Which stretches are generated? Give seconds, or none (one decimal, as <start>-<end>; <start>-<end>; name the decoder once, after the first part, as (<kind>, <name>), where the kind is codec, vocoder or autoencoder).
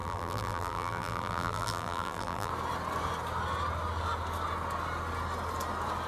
0.0-2.5 (vocoder, BigVGAN v2)